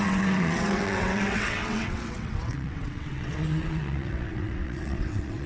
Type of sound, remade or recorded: remade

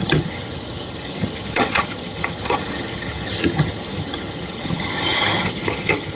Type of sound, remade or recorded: remade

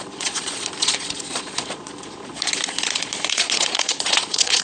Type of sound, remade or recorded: remade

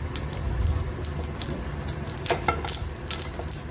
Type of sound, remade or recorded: recorded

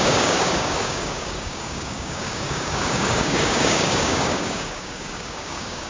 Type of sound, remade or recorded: remade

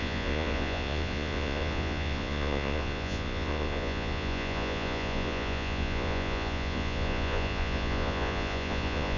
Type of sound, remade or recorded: remade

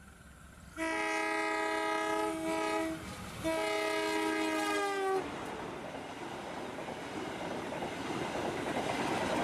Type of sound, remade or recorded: recorded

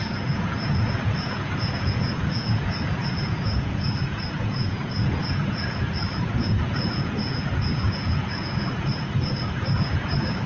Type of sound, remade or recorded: remade